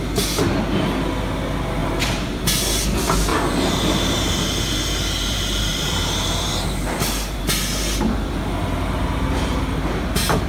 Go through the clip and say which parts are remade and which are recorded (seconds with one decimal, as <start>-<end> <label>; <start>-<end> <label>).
0.0-1.8 recorded; 1.8-2.8 remade; 2.8-3.3 recorded; 3.3-7.4 remade; 7.4-10.5 recorded